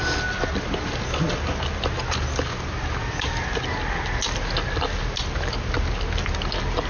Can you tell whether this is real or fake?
real